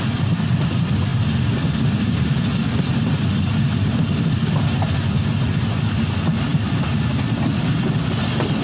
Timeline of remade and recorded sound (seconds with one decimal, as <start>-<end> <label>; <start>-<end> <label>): 0.0-8.6 recorded